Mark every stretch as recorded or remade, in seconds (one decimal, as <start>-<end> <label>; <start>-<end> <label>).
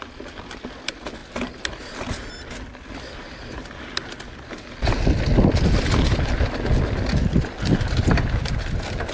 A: 0.0-9.1 recorded